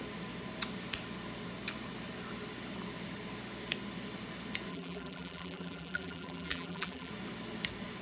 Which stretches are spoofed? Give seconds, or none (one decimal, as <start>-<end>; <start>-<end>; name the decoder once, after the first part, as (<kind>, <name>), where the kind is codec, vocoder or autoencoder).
4.7-7.1 (vocoder, BigVGAN v2)